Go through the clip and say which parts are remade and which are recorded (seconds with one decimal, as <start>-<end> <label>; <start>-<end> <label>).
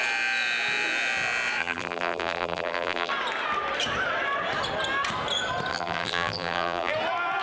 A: 0.0-1.6 recorded; 1.6-3.1 remade; 3.1-5.7 recorded; 5.7-6.9 remade; 6.9-7.4 recorded